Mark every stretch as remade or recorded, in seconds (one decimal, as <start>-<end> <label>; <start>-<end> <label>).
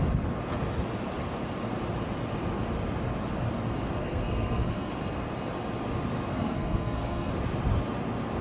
0.0-4.0 recorded; 4.0-4.9 remade; 4.9-6.3 recorded; 6.3-7.3 remade; 7.3-8.4 recorded